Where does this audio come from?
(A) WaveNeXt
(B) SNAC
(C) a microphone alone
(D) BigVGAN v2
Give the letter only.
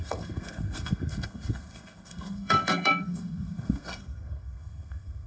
B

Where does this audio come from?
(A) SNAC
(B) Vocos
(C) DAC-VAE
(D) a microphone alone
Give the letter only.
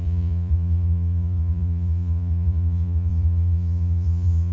B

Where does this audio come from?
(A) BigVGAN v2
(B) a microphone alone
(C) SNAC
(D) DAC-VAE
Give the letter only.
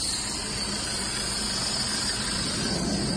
B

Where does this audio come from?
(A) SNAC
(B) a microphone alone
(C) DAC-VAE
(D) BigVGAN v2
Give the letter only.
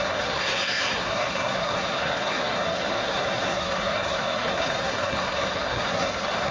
A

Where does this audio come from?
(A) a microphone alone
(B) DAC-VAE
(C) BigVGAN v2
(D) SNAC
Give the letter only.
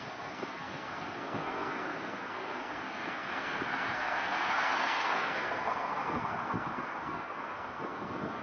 D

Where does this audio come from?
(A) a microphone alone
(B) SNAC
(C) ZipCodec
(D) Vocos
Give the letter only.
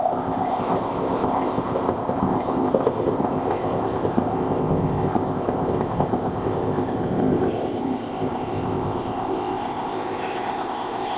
C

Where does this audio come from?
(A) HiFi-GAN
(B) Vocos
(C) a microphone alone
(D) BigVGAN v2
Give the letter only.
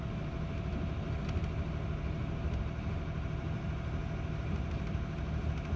C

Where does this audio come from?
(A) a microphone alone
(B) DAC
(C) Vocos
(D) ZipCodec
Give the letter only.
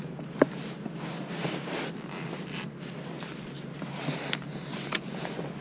A